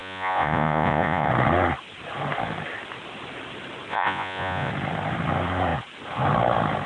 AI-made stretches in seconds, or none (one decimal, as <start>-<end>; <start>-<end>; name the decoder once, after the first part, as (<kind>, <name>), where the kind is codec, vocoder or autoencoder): 0.0-1.3 (vocoder, Vocos); 3.9-4.7